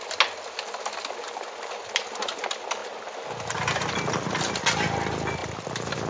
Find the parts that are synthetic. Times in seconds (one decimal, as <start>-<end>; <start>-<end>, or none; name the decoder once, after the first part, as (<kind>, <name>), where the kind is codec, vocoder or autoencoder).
none